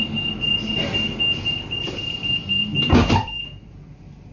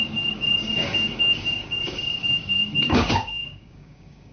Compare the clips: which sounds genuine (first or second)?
first